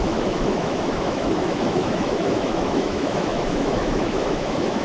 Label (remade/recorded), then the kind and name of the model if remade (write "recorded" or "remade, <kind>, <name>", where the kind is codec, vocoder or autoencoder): remade, autoencoder, DAC-VAE